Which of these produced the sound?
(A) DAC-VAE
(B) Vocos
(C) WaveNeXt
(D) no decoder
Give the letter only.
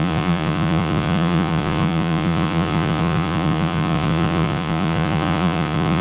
B